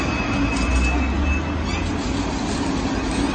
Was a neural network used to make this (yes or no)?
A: no